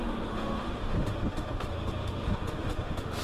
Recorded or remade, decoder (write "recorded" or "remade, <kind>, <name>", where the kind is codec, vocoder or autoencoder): remade, autoencoder, DAC-VAE